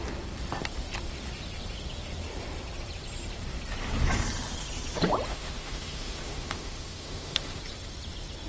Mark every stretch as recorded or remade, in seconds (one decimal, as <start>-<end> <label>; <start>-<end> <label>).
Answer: 0.0-5.3 recorded; 5.3-7.6 remade; 7.6-8.5 recorded